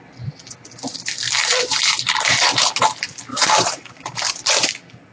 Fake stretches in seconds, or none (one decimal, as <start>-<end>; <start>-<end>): 1.4-2.7; 3.3-4.3